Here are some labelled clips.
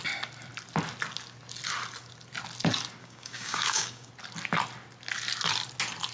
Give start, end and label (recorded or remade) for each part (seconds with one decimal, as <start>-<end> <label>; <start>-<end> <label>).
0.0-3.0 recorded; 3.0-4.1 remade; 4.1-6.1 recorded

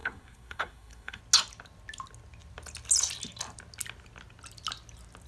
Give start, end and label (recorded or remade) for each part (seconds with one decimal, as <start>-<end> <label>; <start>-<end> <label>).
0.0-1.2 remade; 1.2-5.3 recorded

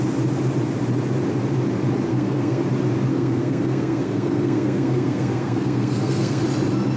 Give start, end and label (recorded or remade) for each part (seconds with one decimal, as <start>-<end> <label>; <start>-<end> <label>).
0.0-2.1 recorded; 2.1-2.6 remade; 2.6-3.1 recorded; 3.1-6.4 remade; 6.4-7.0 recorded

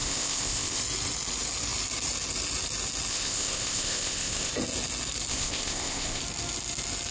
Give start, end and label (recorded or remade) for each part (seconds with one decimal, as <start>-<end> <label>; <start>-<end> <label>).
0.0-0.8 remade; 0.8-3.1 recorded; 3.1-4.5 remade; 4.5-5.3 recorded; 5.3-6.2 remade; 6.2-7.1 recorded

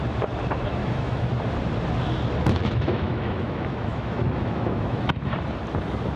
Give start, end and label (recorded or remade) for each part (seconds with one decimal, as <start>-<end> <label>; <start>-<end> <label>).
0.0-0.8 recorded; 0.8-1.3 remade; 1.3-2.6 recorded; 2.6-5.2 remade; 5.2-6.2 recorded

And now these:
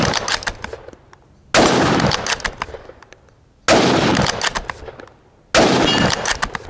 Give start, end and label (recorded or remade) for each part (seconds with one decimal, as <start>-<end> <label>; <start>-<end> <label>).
0.0-6.7 recorded

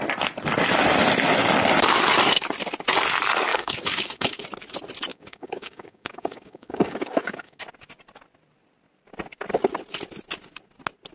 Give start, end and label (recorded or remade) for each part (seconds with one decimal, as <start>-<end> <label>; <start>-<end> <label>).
0.0-3.5 recorded; 3.5-4.4 remade; 4.4-5.1 recorded; 5.1-7.6 remade; 7.6-11.1 recorded